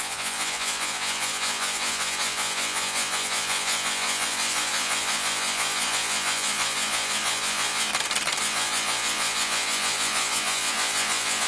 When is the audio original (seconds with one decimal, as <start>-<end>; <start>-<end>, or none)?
7.9-8.4

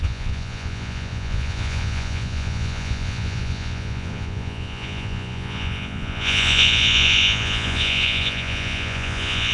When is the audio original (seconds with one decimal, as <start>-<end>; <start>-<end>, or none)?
none